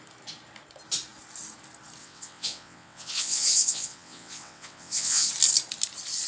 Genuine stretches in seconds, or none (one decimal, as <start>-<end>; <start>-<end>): 0.0-2.0; 5.3-6.3